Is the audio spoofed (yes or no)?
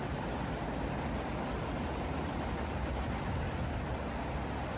no